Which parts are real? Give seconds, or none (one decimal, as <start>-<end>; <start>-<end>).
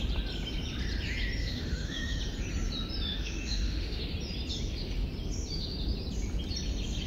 0.0-1.4; 2.2-3.1; 4.0-7.1